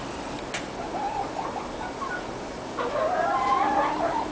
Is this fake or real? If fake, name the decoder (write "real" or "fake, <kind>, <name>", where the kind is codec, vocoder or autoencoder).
real